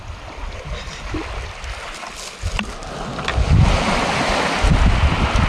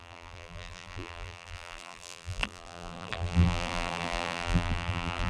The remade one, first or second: second